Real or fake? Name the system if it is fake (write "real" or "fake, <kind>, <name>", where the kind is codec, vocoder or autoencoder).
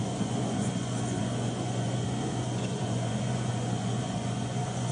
fake, vocoder, Vocos